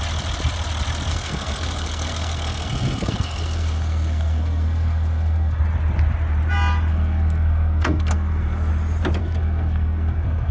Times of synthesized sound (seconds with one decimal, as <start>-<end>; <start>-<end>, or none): 1.1-5.6; 6.9-8.7; 9.2-10.5